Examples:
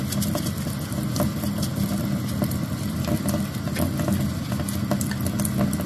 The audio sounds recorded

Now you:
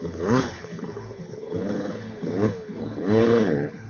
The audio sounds remade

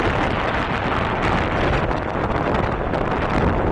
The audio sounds recorded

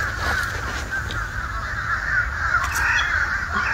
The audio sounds recorded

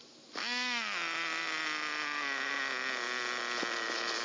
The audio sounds recorded